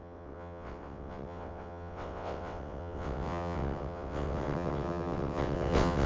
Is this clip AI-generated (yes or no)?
yes